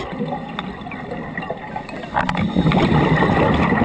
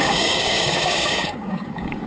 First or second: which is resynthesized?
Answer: second